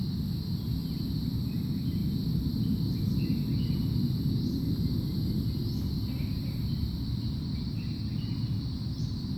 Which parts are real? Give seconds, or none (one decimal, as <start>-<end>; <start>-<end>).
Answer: 0.0-2.0; 2.6-9.4